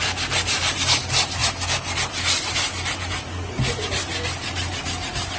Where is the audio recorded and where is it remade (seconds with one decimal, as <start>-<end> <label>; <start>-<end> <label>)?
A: 0.0-5.4 recorded

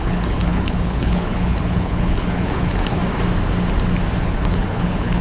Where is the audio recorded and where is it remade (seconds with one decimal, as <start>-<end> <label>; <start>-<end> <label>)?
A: 0.0-3.0 remade; 3.0-4.2 recorded; 4.2-5.2 remade